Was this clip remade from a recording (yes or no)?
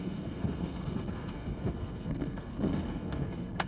yes